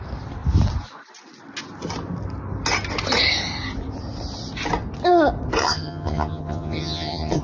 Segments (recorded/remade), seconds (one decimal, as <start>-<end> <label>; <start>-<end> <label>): 0.0-5.6 recorded; 5.6-7.4 remade